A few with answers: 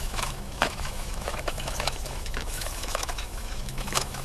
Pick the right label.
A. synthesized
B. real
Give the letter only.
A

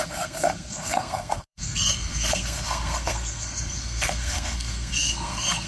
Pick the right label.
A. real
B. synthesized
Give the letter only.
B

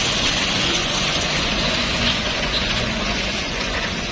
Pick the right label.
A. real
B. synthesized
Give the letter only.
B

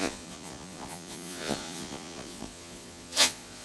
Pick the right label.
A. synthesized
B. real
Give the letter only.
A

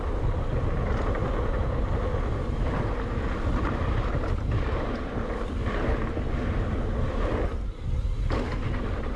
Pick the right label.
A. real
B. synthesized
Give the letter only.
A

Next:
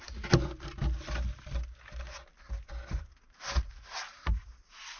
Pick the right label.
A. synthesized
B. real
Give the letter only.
B